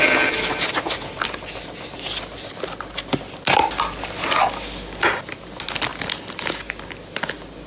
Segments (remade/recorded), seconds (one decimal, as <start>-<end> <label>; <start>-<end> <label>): 0.0-7.7 recorded